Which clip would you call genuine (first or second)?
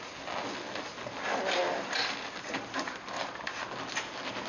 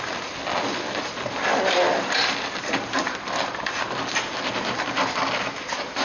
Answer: first